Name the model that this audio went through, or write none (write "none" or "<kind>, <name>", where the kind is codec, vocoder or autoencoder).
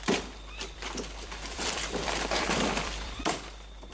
vocoder, BigVGAN v2